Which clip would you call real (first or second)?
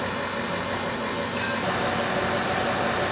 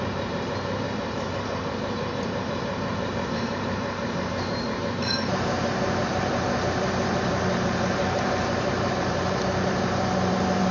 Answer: first